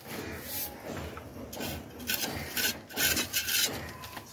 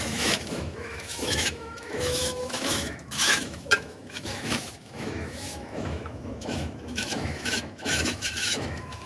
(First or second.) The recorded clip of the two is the first